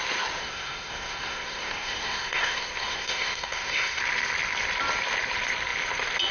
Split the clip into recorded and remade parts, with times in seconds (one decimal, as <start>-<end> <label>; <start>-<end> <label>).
0.0-0.4 recorded; 0.4-4.0 remade; 4.0-6.3 recorded